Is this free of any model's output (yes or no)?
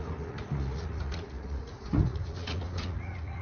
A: no